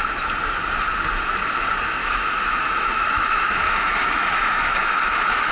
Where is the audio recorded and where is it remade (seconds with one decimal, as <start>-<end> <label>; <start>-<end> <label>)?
0.0-2.0 recorded; 2.0-5.5 remade